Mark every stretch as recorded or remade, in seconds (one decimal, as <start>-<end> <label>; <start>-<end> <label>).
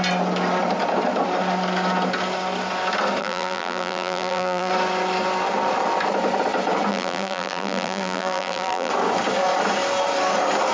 0.0-3.2 recorded; 3.2-4.7 remade; 4.7-6.9 recorded; 6.9-8.9 remade; 8.9-10.7 recorded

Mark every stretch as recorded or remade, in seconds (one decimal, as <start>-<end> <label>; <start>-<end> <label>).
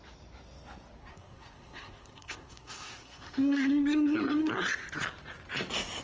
0.0-1.0 recorded; 1.0-4.5 remade; 4.5-6.0 recorded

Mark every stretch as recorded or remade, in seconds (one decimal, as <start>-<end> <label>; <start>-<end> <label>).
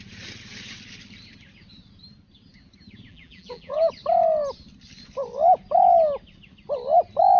0.0-3.1 recorded; 3.1-3.9 remade; 3.9-7.4 recorded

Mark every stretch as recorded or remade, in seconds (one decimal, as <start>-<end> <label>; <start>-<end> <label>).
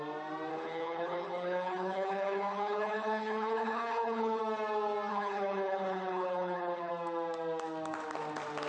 0.0-0.5 recorded; 0.5-4.4 remade; 4.4-5.1 recorded; 5.1-6.9 remade; 6.9-8.7 recorded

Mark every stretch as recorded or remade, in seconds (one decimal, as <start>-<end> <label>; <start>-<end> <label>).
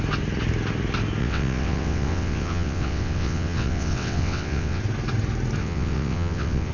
0.0-1.2 recorded; 1.2-4.8 remade; 4.8-5.6 recorded; 5.6-6.7 remade